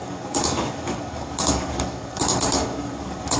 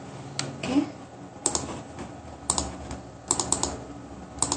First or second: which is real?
second